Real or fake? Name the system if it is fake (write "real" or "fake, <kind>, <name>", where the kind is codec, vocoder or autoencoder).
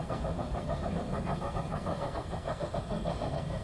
fake, codec, SNAC